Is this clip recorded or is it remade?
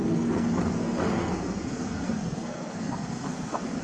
remade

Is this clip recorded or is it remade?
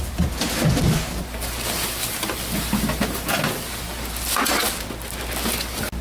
recorded